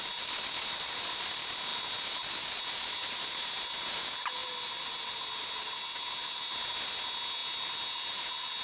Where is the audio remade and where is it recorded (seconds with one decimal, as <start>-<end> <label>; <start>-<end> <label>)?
0.0-8.6 recorded

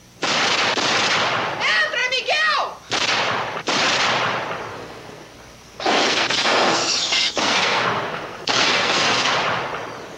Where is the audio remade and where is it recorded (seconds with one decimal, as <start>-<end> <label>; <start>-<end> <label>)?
0.0-4.7 recorded; 4.7-9.3 remade; 9.3-10.2 recorded

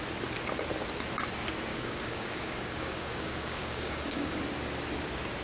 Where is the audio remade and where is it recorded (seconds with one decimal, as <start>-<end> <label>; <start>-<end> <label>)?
0.0-1.7 recorded; 1.7-4.4 remade; 4.4-5.4 recorded

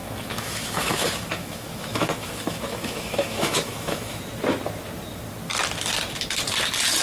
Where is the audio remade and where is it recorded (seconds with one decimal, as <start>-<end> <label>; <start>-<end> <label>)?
0.0-4.2 remade; 4.2-7.0 recorded